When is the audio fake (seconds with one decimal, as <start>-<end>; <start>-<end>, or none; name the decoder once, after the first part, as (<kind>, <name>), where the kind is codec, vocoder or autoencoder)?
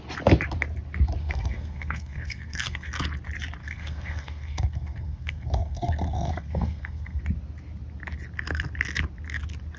1.2-3.0 (codec, SNAC); 3.6-7.2